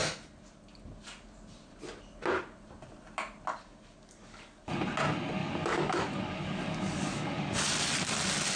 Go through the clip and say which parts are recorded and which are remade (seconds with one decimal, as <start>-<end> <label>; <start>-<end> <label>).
0.0-3.5 recorded; 3.5-4.7 remade; 4.7-5.4 recorded; 5.4-7.7 remade; 7.7-8.6 recorded